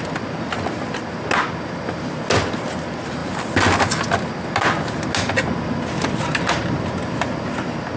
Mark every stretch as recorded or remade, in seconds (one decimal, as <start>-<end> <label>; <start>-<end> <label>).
0.0-8.0 recorded